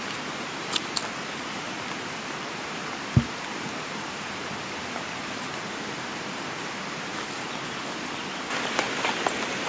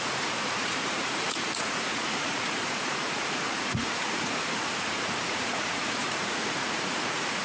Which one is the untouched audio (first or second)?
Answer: first